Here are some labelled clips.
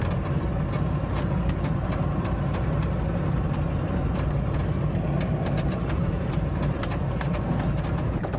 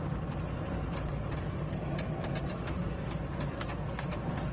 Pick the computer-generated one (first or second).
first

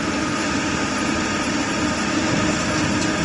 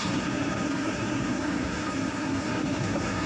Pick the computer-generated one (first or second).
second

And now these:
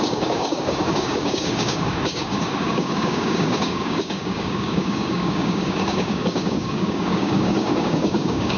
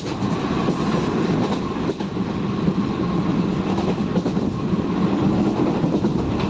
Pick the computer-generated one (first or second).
first